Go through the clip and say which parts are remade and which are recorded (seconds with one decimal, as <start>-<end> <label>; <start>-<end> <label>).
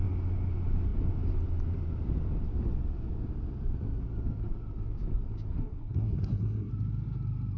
0.0-5.5 recorded; 5.5-6.7 remade; 6.7-7.6 recorded